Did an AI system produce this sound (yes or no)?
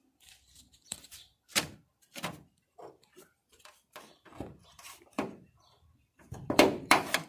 yes